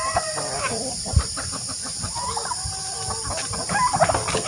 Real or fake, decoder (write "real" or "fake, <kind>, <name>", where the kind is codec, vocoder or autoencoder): real